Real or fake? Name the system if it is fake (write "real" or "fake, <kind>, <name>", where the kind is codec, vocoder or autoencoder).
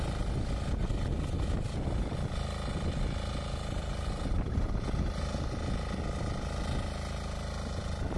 real